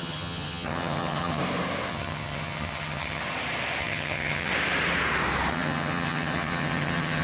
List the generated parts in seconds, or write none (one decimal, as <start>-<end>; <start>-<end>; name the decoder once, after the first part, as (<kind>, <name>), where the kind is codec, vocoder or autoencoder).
0.0-1.4 (vocoder, HiFi-GAN); 1.9-3.2; 3.8-4.5; 5.5-7.2